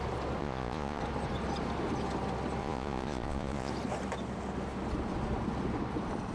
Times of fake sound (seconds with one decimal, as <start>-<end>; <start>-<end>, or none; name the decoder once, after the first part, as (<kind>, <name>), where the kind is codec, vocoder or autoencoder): 0.4-1.0 (vocoder, Vocos); 2.6-3.7